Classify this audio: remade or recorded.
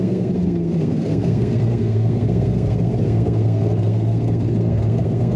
remade